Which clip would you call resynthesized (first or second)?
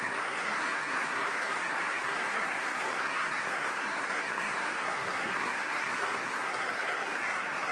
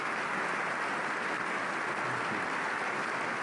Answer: first